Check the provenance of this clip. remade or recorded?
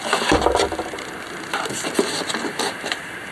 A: recorded